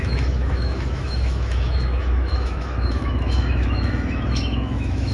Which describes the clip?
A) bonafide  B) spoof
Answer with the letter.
B